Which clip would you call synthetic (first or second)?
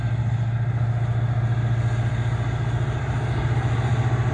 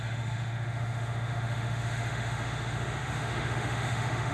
second